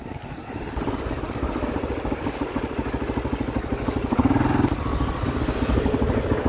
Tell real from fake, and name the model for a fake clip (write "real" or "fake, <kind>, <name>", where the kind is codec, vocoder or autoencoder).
real